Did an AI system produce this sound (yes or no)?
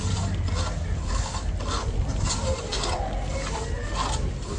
no